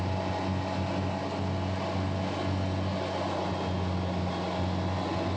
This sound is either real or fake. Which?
real